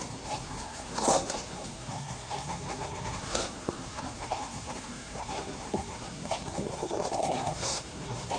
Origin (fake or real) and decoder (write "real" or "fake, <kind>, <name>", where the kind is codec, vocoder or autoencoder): fake, codec, SNAC